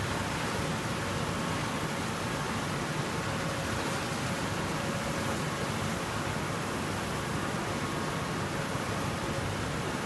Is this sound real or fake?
real